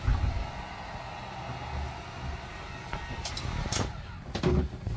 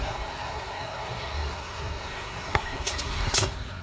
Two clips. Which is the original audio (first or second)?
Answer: first